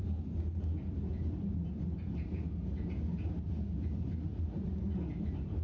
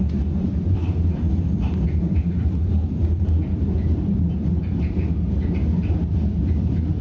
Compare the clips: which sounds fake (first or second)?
second